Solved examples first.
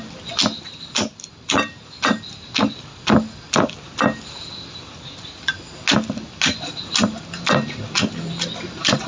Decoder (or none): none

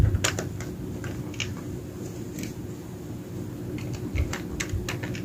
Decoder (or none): none